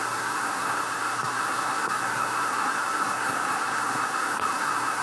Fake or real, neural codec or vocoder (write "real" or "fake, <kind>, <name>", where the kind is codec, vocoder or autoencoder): fake, codec, SNAC